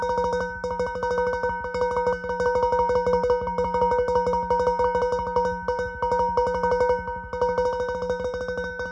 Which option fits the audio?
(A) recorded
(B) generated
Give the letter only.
A